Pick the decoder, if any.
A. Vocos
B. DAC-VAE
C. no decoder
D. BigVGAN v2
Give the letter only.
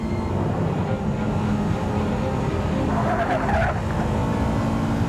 C